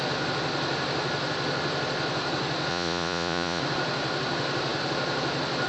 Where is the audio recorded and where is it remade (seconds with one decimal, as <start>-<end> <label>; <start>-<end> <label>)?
0.0-2.7 recorded; 2.7-3.6 remade; 3.6-5.7 recorded